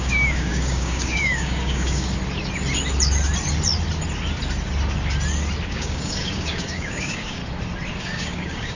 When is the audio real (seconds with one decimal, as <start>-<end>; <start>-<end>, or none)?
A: 2.2-5.7; 7.4-8.0